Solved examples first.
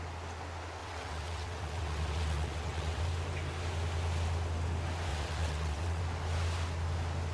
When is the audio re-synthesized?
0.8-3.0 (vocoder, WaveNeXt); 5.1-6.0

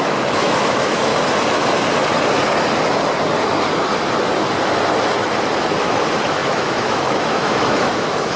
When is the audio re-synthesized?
0.0-1.1 (autoencoder, DAC-VAE); 5.8-8.4

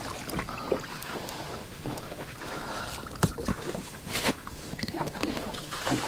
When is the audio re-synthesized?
0.9-2.8 (autoencoder, DAC-VAE); 3.5-6.1

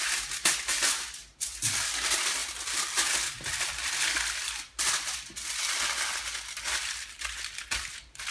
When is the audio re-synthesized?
2.4-7.4 (vocoder, BigVGAN v2)

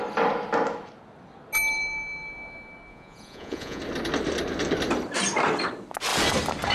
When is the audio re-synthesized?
2.9-3.8 (vocoder, Vocos)

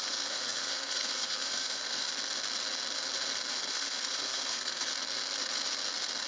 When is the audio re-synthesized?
0.0-2.1 (codec, SNAC); 3.5-4.9